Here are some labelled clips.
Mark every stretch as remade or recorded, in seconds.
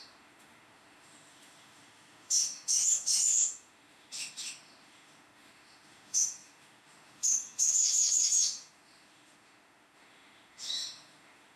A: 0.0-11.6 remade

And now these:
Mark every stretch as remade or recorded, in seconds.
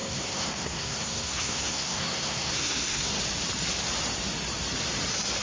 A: 0.0-3.2 remade; 3.2-5.4 recorded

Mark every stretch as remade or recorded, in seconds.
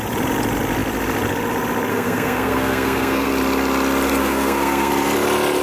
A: 0.0-1.9 recorded; 1.9-3.3 remade; 3.3-4.2 recorded; 4.2-4.9 remade; 4.9-5.6 recorded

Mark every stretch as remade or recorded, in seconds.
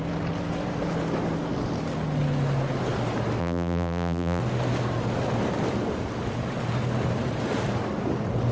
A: 0.0-3.4 recorded; 3.4-4.4 remade; 4.4-8.5 recorded